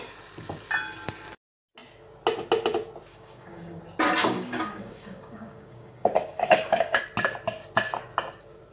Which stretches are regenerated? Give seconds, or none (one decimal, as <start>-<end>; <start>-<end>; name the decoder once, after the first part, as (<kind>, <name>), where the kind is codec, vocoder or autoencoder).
3.1-3.8 (codec, DAC); 4.2-7.0